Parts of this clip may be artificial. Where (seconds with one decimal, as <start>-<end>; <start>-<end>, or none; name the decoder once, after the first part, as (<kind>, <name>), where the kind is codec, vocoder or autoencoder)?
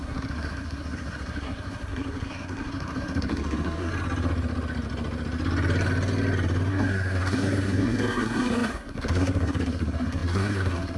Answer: 0.0-3.9 (codec, SNAC); 6.7-11.0